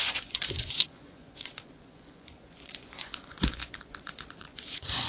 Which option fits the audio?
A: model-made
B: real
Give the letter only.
A